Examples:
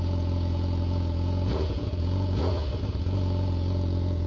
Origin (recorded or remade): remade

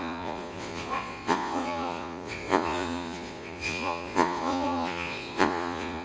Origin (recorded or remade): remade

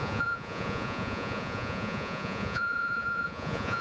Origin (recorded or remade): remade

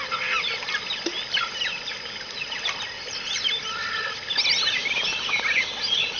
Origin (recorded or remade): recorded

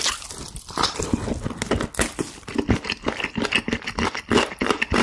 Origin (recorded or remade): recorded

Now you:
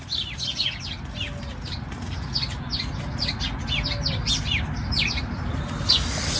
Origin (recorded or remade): recorded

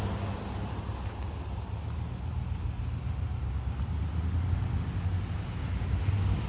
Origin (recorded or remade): recorded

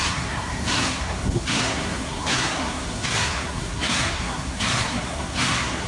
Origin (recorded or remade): remade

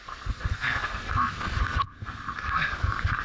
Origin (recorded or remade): remade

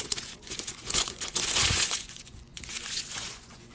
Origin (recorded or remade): remade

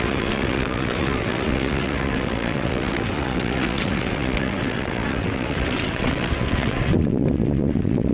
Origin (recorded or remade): remade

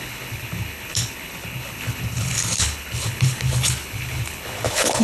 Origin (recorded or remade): remade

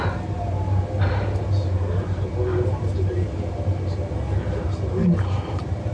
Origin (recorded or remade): recorded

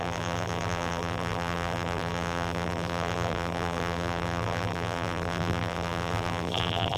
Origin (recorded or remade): remade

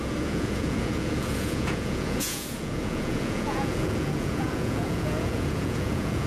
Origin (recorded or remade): remade